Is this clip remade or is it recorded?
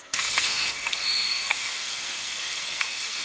remade